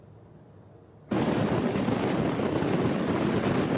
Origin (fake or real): real